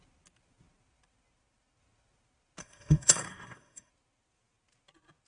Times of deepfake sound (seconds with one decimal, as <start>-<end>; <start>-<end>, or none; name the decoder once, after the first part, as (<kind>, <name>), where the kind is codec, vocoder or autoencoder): 2.6-3.9 (codec, SNAC)